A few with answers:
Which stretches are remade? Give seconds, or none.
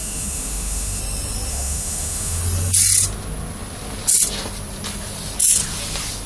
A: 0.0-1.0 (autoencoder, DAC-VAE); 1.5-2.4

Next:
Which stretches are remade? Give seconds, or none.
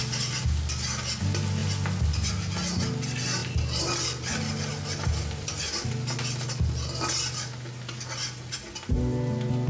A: none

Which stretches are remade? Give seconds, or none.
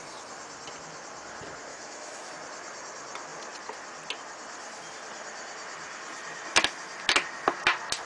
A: 1.7-2.3 (autoencoder, DAC-VAE)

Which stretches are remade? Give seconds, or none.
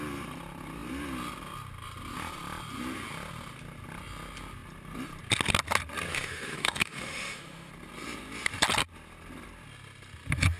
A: 6.1-7.7 (autoencoder, DAC-VAE)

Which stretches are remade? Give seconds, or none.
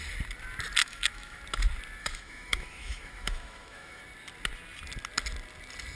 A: 0.8-1.4 (autoencoder, DAC-VAE); 2.0-4.0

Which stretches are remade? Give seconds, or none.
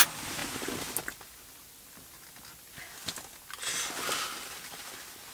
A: none